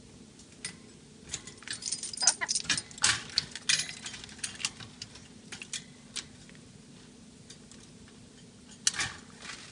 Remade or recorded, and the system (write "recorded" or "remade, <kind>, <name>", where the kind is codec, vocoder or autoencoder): recorded